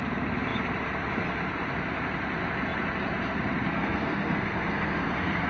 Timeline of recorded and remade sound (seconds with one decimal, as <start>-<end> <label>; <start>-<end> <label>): 0.0-3.7 recorded; 3.7-5.5 remade